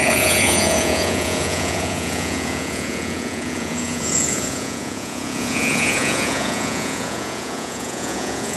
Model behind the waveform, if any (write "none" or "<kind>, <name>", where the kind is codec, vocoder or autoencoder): vocoder, Vocos